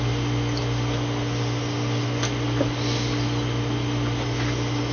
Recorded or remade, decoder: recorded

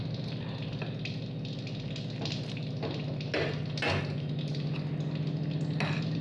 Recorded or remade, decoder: recorded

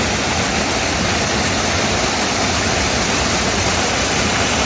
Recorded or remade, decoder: remade, vocoder, BigVGAN v2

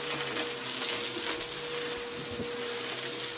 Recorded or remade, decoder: recorded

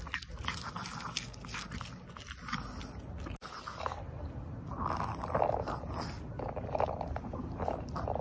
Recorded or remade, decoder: recorded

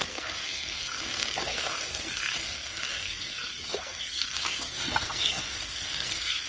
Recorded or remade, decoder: remade, codec, SNAC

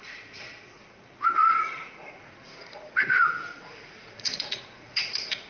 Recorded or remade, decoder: remade, vocoder, Vocos